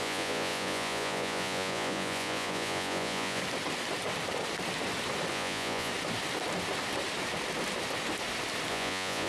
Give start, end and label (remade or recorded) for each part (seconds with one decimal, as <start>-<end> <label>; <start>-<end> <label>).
0.0-3.4 remade; 3.4-5.3 recorded; 5.3-5.9 remade; 5.9-8.7 recorded; 8.7-9.3 remade